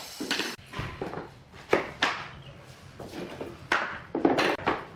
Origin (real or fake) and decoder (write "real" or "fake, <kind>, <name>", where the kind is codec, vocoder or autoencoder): real